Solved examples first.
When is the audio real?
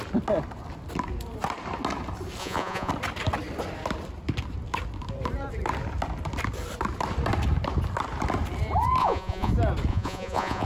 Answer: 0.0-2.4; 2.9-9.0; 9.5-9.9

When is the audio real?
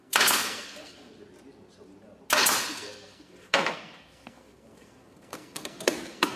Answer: 1.1-2.7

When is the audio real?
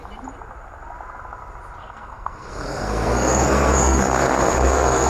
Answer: 0.0-1.8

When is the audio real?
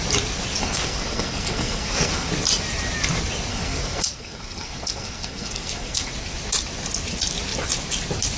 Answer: 0.0-0.6; 2.3-3.5; 6.1-8.4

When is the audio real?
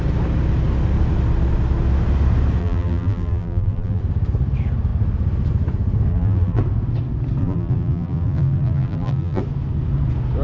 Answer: 0.0-2.6; 4.0-6.1; 6.6-7.4; 9.4-10.4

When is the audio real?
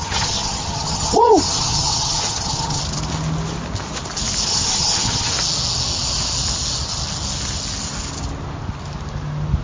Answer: 2.8-4.5; 5.3-9.6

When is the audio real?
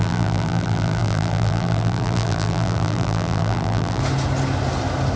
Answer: 4.0-5.2